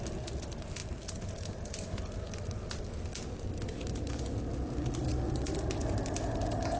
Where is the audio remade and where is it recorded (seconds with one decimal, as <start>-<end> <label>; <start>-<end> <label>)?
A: 0.0-6.8 recorded